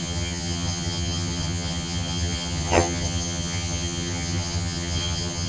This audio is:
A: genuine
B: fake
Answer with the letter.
B